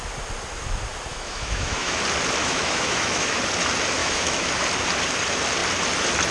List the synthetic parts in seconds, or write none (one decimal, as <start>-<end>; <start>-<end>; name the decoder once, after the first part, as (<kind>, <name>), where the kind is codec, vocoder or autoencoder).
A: 1.1-2.0 (autoencoder, DAC-VAE); 2.4-3.4; 4.0-4.5